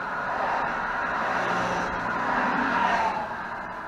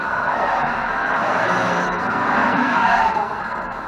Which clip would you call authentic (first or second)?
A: first